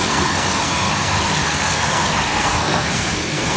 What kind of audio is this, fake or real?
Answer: fake